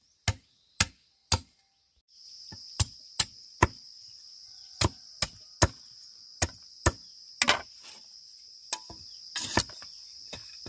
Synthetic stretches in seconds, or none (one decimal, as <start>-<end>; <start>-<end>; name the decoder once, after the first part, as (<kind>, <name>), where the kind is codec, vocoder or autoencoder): none

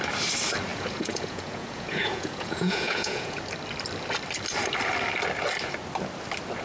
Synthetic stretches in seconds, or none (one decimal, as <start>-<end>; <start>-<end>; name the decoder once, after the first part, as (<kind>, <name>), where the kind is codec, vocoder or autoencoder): 0.7-3.4 (vocoder, Vocos)

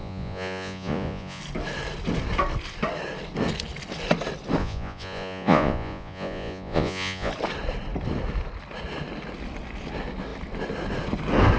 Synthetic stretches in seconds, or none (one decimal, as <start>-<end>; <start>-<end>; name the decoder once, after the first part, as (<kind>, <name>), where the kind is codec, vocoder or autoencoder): 0.0-1.4 (vocoder, Vocos); 4.6-7.3

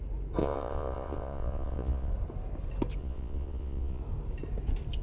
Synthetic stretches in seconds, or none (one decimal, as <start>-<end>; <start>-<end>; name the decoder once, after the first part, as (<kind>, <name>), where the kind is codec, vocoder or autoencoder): 0.4-2.1 (vocoder, Vocos); 3.0-4.0

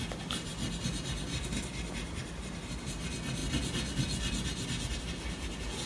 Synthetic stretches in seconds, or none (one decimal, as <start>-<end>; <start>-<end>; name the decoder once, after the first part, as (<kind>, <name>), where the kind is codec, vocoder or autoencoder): none

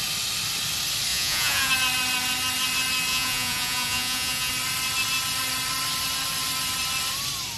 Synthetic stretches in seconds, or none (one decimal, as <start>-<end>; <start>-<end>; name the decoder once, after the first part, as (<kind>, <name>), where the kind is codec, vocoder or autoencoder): 1.1-1.7 (vocoder, Vocos); 3.1-4.5

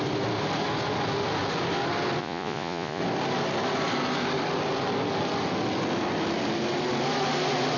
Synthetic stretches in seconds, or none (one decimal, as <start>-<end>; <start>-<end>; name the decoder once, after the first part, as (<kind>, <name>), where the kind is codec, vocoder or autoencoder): 2.2-3.0 (vocoder, Vocos)